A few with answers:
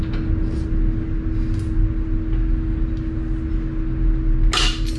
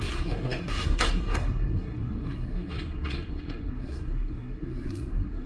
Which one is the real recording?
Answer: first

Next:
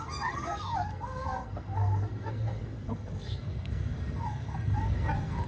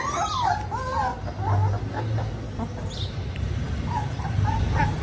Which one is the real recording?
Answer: second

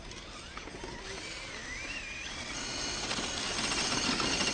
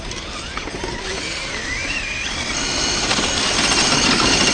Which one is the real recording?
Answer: first